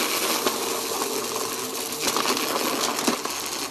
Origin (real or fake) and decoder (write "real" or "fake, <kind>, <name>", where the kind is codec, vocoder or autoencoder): real